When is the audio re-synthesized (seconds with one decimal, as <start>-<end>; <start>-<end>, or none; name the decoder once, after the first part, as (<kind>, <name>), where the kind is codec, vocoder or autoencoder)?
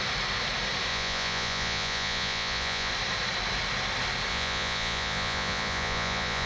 0.9-2.9 (vocoder, Vocos); 4.3-6.5